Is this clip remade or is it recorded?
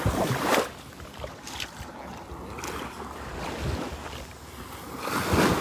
recorded